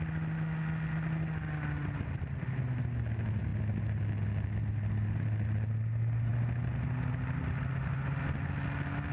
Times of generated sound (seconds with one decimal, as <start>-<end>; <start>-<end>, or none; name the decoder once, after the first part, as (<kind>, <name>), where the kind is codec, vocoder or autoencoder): none